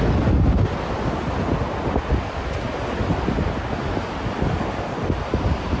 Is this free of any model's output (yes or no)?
yes